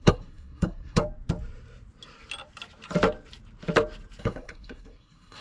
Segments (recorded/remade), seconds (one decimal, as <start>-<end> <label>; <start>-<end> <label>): 0.0-1.0 remade; 1.0-4.2 recorded; 4.2-5.4 remade